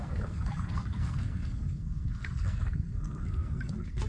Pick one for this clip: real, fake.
fake